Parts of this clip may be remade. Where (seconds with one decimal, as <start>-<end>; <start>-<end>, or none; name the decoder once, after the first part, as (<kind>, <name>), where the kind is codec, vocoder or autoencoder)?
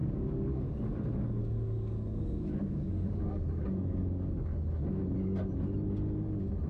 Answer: 0.0-0.8 (codec, DAC); 1.4-4.3